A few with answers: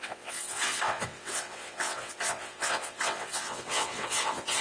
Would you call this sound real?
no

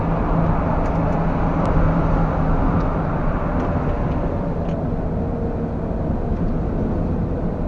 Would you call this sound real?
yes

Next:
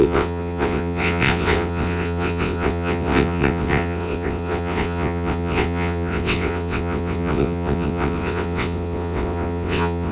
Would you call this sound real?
no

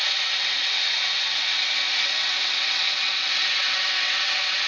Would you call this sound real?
no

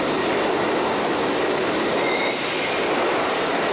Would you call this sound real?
yes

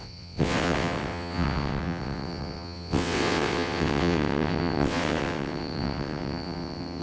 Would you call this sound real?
no